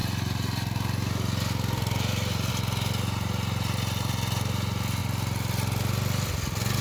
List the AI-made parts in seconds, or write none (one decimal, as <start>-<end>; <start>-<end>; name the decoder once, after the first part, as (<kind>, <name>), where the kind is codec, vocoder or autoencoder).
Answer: none